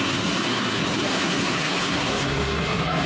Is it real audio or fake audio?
fake